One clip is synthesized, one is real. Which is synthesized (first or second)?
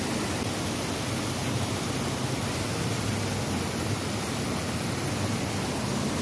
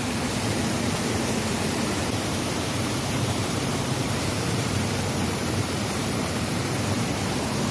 second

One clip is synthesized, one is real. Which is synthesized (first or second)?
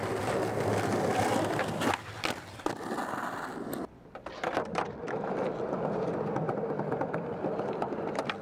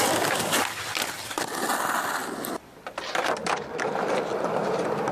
second